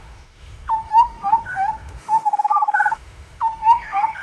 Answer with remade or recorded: remade